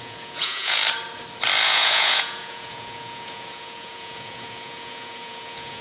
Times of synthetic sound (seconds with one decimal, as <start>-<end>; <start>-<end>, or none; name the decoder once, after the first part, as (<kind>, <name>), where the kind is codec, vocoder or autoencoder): 0.0-0.8 (vocoder, Vocos); 1.6-5.8